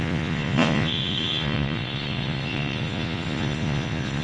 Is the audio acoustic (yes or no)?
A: no